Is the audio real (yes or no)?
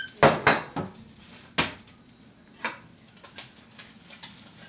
yes